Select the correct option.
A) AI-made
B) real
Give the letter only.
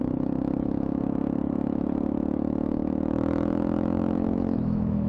A